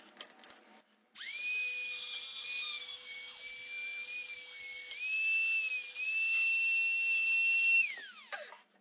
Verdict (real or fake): real